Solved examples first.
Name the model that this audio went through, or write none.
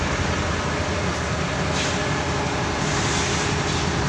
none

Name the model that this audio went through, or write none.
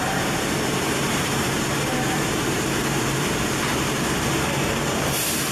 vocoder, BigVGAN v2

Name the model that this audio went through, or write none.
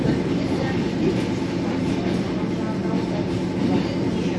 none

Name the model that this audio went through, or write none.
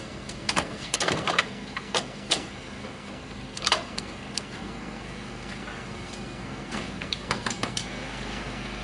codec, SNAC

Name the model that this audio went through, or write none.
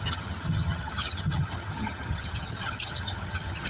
vocoder, HiFi-GAN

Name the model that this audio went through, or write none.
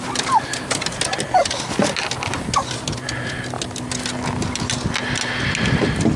none